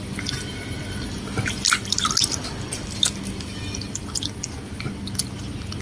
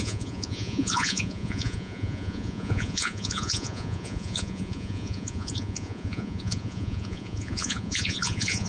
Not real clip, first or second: second